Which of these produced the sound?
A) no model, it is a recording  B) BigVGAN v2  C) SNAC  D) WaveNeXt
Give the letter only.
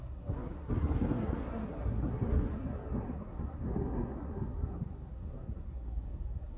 C